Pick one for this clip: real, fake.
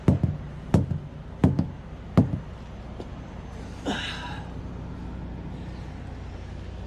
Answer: real